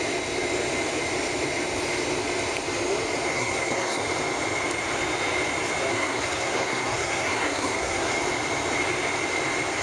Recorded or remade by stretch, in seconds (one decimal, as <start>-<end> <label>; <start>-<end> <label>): 0.0-3.3 recorded; 3.3-4.0 remade; 4.0-5.9 recorded; 5.9-8.1 remade; 8.1-9.8 recorded